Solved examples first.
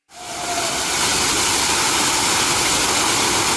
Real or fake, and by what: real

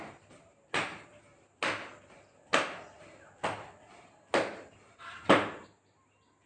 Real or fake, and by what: real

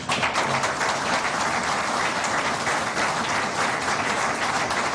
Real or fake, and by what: real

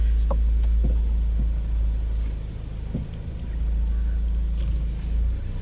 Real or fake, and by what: real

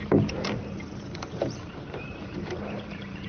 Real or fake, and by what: fake, vocoder, BigVGAN v2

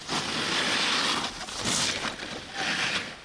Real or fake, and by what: real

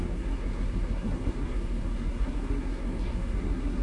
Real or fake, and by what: fake, codec, SNAC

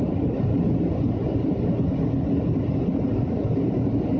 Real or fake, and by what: real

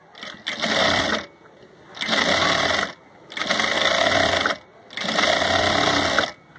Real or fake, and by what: real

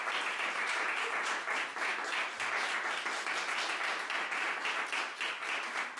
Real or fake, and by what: real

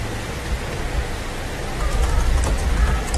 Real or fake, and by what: real